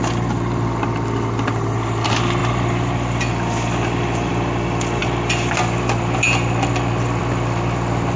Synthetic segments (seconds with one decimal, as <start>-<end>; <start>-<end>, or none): none